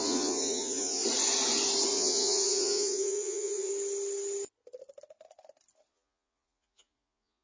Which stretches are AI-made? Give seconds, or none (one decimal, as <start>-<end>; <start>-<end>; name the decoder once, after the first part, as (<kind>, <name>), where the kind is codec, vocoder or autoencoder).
0.0-1.0 (vocoder, Vocos); 1.9-3.7; 5.9-7.4